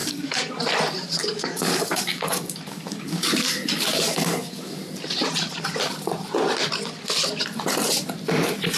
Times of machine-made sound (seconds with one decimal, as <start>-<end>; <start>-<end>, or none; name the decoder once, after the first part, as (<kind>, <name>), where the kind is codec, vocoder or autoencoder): 0.0-0.6 (codec, DAC); 1.3-4.8